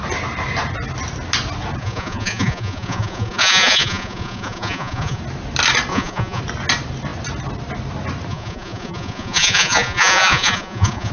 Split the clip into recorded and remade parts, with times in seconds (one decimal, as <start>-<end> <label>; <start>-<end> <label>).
0.0-1.8 recorded; 1.8-5.2 remade; 5.2-5.9 recorded; 5.9-6.4 remade; 6.4-8.3 recorded; 8.3-11.1 remade